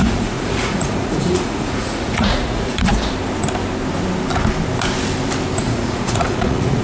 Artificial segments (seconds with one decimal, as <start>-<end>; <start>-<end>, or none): 0.0-2.9; 5.6-6.8